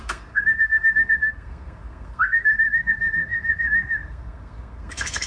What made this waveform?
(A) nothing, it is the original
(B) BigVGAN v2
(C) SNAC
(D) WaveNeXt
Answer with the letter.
C